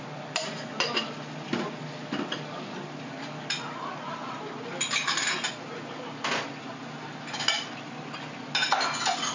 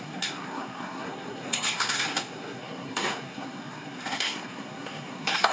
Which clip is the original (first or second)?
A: first